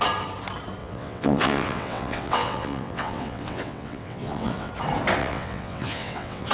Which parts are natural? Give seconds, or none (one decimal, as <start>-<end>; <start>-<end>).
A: 0.0-0.8; 4.7-5.2